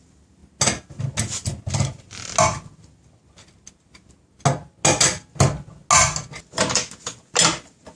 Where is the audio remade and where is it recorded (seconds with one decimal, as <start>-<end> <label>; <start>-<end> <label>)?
0.0-8.0 recorded